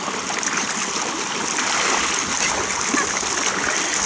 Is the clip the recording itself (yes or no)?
yes